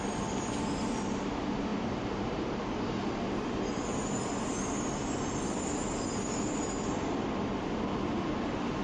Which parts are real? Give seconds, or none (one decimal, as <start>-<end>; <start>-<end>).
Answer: 0.0-8.8